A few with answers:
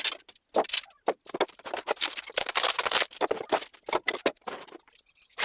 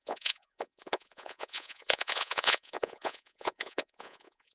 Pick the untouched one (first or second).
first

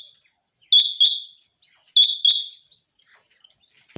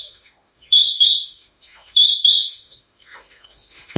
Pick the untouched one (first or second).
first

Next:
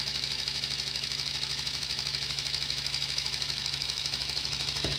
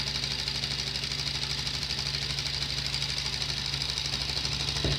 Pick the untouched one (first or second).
second